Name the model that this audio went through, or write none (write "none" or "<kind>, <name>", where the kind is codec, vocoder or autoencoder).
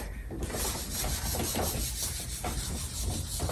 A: none